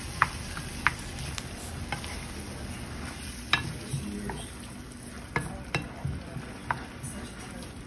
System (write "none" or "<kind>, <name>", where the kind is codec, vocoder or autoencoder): none